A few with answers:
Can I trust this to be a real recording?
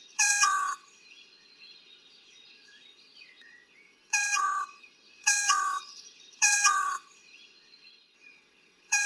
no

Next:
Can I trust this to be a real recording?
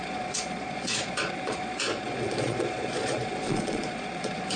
no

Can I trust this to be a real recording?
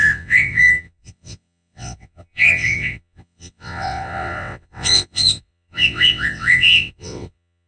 no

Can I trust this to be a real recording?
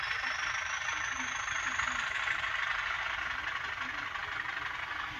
yes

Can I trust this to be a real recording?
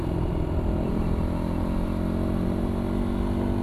yes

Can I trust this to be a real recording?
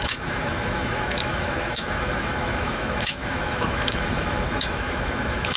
no